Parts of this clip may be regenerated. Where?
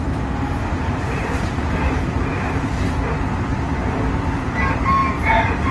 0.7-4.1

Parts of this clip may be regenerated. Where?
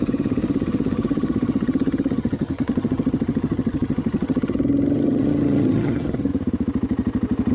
0.0-6.3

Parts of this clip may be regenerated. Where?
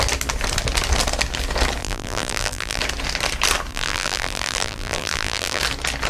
1.8-2.8; 3.7-5.6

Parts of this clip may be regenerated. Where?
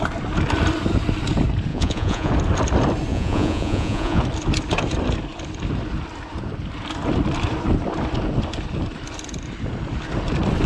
1.7-2.3; 3.1-4.2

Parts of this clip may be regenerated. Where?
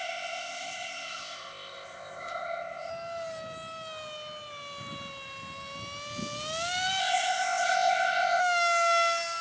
0.0-2.9; 7.0-8.4